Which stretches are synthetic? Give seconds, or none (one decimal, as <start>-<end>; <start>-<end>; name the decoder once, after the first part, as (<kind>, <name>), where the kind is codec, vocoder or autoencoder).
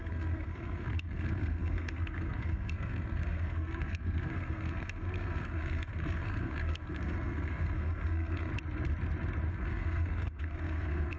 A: 0.0-8.5 (codec, SNAC); 9.5-11.2